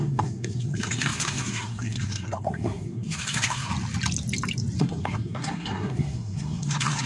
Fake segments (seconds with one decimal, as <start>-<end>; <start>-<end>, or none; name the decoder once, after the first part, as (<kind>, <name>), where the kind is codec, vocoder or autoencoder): 0.0-3.7 (codec, SNAC); 4.8-7.1